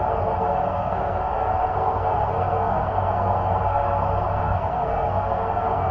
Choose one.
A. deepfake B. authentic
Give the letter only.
A